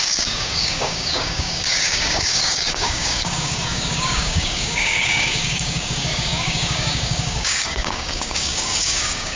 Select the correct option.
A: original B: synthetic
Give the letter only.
B